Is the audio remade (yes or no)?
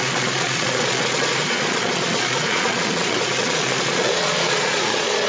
yes